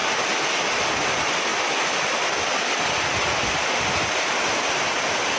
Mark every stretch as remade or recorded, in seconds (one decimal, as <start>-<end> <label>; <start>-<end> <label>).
0.0-5.4 recorded